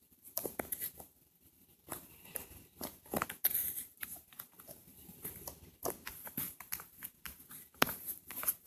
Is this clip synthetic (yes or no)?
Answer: yes